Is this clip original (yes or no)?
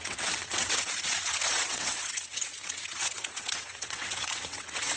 no